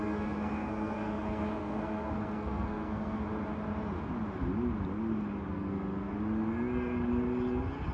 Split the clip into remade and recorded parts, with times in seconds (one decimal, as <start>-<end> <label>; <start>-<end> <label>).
0.0-3.2 remade; 3.2-5.5 recorded; 5.5-6.1 remade; 6.1-7.9 recorded

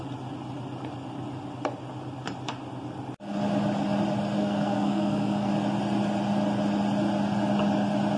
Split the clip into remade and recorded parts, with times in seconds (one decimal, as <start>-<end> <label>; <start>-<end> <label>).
0.0-4.4 recorded; 4.4-5.5 remade; 5.5-8.2 recorded

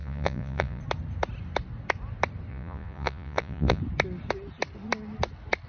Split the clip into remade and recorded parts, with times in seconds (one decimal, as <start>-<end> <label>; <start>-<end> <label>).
0.0-0.8 remade; 0.8-2.5 recorded; 2.5-3.8 remade; 3.8-5.7 recorded

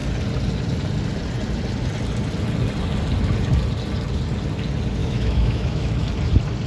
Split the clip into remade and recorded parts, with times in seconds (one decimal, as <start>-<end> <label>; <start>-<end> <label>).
0.0-5.0 recorded; 5.0-6.1 remade; 6.1-6.7 recorded